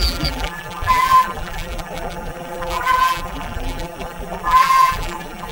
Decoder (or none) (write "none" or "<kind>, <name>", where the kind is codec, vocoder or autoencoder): vocoder, BigVGAN v2